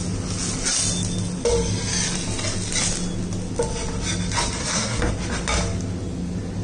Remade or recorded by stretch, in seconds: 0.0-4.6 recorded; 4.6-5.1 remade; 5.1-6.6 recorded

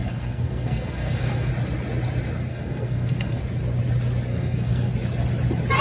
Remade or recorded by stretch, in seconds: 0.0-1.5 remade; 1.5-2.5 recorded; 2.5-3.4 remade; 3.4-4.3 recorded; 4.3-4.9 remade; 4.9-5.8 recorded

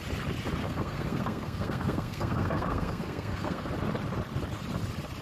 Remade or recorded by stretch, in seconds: 0.0-0.6 recorded; 0.6-3.7 remade; 3.7-5.2 recorded

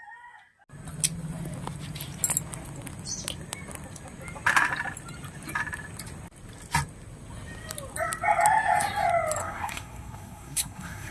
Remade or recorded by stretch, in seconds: 0.0-9.4 recorded; 9.4-11.1 remade

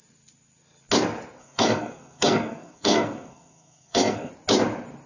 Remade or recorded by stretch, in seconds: 0.0-1.4 recorded; 1.4-4.3 remade; 4.3-5.1 recorded

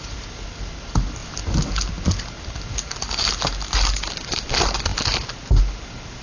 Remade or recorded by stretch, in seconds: 0.0-6.2 recorded